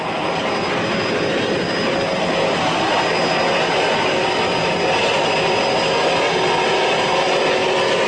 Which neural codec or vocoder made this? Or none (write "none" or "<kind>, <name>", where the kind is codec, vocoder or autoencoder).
none